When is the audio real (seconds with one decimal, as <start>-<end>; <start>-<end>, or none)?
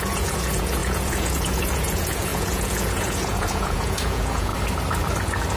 4.5-5.6